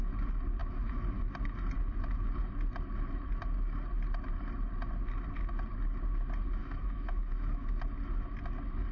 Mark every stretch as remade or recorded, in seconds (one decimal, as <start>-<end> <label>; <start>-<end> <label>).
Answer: 0.0-0.6 recorded; 0.6-1.2 remade; 1.2-6.6 recorded; 6.6-7.8 remade; 7.8-8.9 recorded